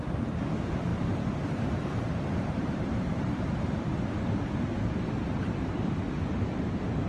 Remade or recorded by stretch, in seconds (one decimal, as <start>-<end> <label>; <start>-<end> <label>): 0.0-0.9 recorded; 0.9-3.1 remade; 3.1-7.1 recorded